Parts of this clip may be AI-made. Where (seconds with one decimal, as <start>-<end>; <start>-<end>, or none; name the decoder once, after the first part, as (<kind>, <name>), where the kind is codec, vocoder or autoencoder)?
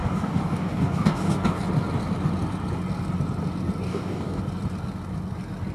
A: 0.0-1.6 (codec, DAC); 3.9-4.4